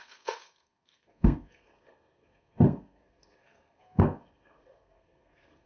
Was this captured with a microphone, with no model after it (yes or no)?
no